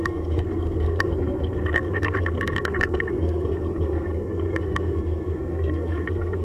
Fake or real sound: fake